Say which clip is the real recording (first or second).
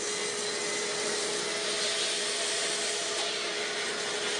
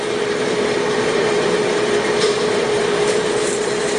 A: first